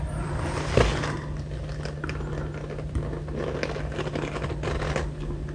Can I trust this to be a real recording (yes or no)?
yes